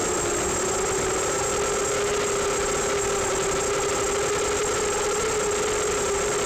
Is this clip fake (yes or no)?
no